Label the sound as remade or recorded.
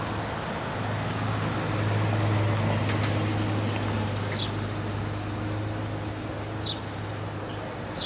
recorded